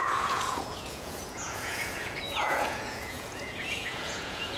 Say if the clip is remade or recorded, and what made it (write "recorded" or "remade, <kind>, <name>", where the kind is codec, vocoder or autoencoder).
remade, vocoder, Vocos